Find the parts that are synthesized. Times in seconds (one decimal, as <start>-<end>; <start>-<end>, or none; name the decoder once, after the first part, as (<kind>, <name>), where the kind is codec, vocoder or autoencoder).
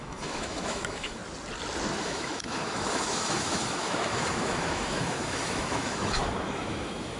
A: 0.0-1.2 (autoencoder, DAC-VAE); 2.0-7.2